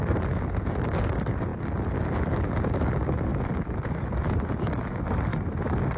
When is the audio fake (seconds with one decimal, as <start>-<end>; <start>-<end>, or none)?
none